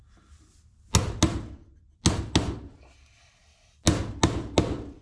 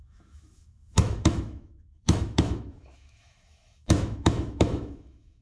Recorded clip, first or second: first